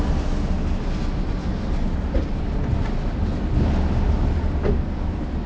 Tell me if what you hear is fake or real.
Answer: real